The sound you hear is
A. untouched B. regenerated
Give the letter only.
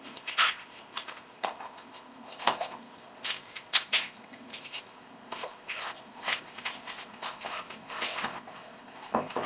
B